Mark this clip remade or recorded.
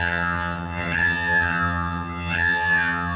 remade